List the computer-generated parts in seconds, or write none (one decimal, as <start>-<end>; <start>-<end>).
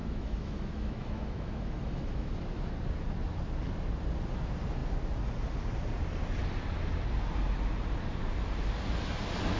0.0-2.7